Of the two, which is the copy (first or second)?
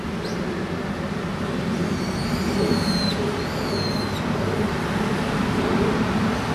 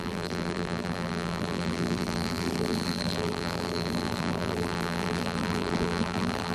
second